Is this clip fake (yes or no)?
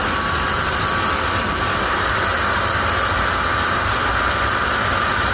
no